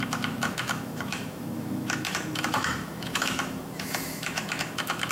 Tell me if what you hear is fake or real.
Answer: fake